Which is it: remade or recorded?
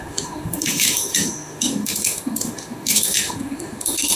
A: remade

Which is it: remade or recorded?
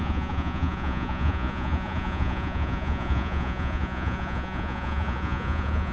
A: remade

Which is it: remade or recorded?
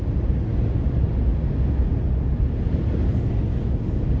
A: recorded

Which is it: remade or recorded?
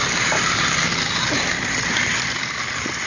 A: recorded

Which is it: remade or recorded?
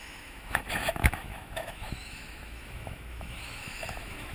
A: remade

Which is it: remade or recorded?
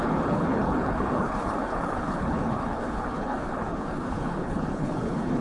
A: remade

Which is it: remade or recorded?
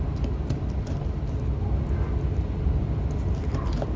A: recorded